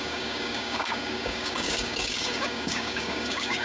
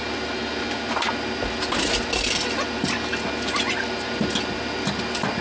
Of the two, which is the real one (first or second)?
second